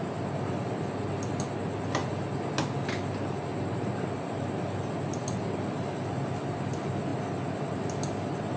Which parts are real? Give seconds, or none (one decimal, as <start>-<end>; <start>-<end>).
0.0-8.6